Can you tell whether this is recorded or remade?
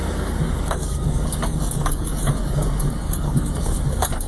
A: remade